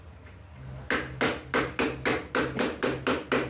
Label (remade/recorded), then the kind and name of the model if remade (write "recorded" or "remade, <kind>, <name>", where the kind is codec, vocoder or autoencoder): recorded